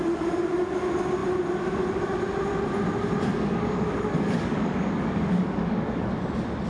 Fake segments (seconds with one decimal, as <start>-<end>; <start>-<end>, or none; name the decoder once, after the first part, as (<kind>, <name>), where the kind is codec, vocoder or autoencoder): 3.3-6.1 (codec, DAC)